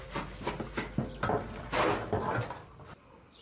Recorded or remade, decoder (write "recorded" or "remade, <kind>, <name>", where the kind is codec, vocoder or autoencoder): recorded